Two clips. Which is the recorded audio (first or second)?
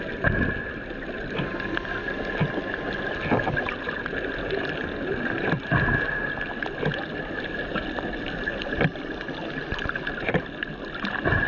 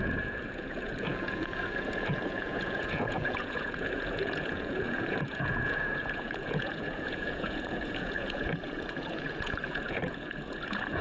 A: first